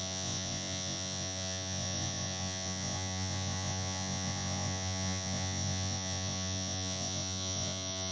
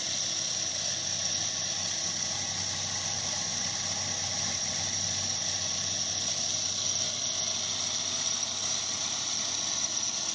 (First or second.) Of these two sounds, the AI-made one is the first